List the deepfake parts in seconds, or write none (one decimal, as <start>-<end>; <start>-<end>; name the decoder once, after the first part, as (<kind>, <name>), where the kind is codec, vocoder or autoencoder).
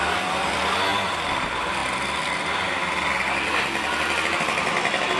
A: 0.0-1.8 (vocoder, BigVGAN v2)